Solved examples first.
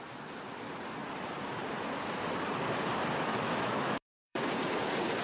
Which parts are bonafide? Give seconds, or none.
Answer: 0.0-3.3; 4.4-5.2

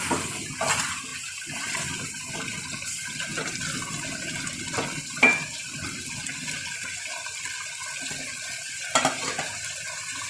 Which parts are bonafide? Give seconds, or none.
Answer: 0.0-1.1; 2.3-10.3

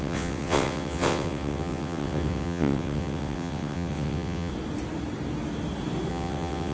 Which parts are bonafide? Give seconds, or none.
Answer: 4.5-6.1

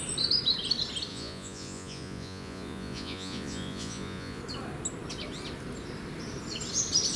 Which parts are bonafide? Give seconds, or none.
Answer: 0.0-1.1; 4.4-7.2

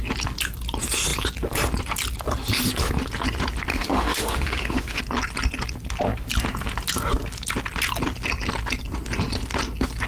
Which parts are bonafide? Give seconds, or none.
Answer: 0.0-3.7; 5.0-10.1

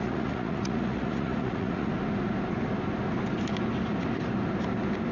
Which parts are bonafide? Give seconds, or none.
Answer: 1.9-5.1

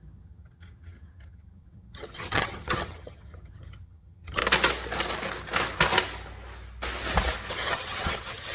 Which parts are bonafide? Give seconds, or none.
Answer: 4.4-7.5